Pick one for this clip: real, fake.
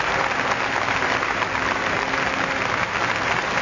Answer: real